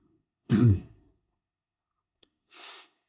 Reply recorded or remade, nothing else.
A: remade